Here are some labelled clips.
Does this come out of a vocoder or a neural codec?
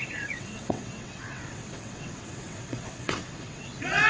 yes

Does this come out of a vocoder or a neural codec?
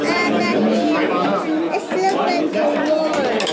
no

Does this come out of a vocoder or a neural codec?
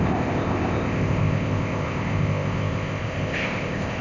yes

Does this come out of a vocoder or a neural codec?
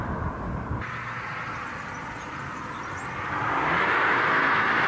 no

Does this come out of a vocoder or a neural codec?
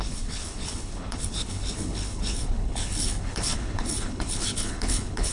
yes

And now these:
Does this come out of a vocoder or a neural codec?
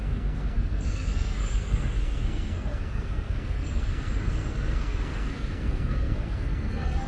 yes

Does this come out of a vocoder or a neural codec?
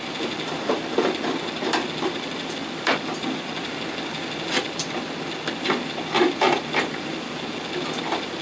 yes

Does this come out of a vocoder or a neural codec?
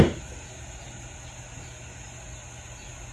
no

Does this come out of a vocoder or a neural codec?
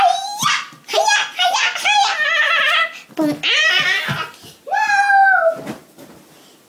no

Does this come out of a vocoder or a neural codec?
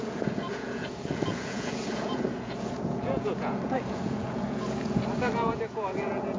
yes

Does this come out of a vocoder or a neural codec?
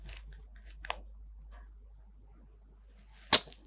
no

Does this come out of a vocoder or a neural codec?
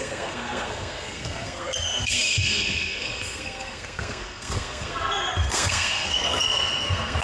yes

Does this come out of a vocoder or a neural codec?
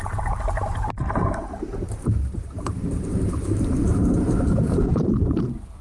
yes